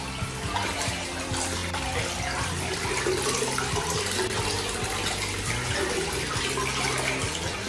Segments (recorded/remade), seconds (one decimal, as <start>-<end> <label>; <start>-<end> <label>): 0.0-7.7 recorded